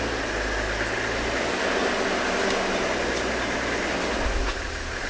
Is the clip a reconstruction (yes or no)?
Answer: no